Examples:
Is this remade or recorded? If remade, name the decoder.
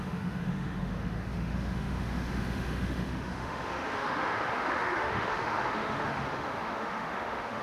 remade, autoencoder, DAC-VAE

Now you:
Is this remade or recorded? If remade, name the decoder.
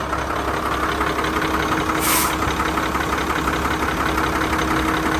recorded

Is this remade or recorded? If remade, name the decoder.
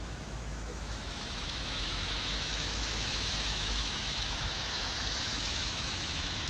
remade, autoencoder, DAC-VAE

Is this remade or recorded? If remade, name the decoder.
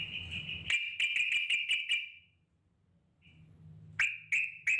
recorded